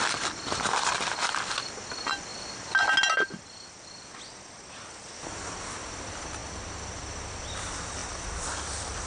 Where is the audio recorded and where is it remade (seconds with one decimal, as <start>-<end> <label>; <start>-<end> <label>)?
0.0-9.1 recorded